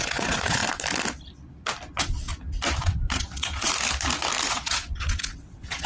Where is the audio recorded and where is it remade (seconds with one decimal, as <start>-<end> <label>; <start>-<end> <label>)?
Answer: 0.0-0.6 remade; 0.6-1.9 recorded; 1.9-2.3 remade; 2.3-2.8 recorded; 2.8-3.7 remade; 3.7-4.5 recorded; 4.5-5.9 remade